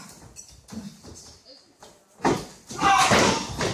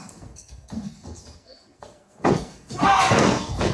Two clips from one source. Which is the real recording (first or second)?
first